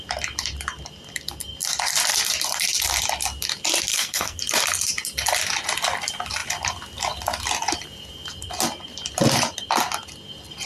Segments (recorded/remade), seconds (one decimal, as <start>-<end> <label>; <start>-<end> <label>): 0.0-3.9 recorded; 3.9-4.4 remade; 4.4-10.7 recorded